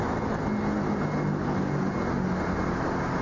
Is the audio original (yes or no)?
yes